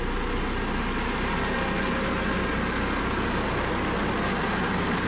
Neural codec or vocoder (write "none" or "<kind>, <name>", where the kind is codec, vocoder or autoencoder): none